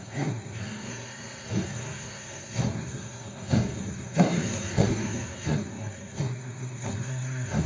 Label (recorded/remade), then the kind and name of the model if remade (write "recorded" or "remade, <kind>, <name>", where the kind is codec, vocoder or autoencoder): remade, codec, SNAC